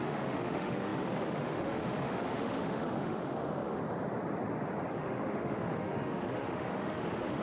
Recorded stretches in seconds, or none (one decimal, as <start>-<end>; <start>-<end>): 3.8-4.9